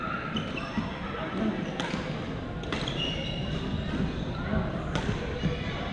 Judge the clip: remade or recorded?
recorded